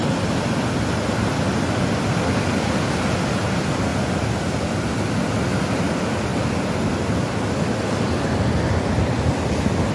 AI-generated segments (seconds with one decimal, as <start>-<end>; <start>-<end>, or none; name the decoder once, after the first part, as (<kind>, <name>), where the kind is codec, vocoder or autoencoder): none